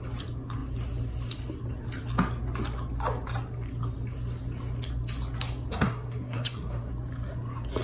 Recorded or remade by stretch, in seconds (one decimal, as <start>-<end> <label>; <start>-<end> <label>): 0.0-5.7 recorded; 5.7-6.9 remade; 6.9-7.8 recorded